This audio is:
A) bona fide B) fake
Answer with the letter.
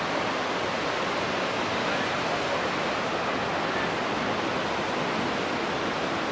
A